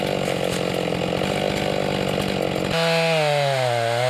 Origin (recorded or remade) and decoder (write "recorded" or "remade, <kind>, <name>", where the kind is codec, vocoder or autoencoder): recorded